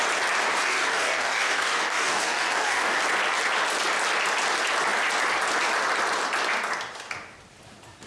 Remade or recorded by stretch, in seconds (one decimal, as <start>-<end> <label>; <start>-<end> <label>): 0.0-0.5 recorded; 0.5-3.0 remade; 3.0-8.1 recorded